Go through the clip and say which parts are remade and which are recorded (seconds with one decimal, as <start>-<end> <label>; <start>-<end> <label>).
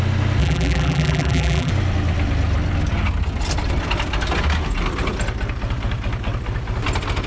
0.0-0.4 recorded; 0.4-1.7 remade; 1.7-7.3 recorded